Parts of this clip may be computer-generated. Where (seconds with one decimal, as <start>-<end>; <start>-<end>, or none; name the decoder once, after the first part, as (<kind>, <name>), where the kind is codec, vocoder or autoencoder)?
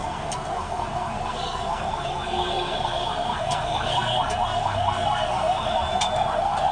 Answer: 0.0-6.7 (codec, SNAC)